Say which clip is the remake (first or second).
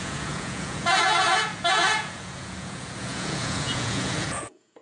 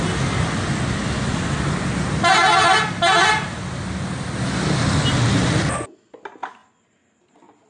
first